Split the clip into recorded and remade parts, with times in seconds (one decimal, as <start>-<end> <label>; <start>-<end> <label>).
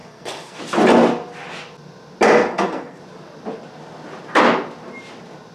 0.0-0.6 remade; 0.6-2.4 recorded; 2.4-3.0 remade; 3.0-5.5 recorded